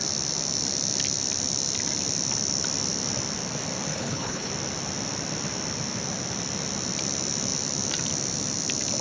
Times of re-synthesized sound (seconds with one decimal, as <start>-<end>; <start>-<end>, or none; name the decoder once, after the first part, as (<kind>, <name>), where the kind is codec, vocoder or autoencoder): 3.9-4.5 (codec, HILCodec)